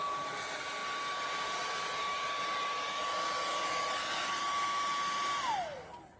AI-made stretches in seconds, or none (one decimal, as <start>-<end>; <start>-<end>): none